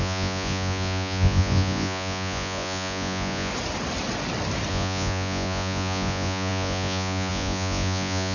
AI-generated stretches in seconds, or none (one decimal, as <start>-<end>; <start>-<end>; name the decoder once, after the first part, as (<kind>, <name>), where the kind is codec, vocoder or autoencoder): 0.0-3.5 (vocoder, Vocos); 4.7-8.3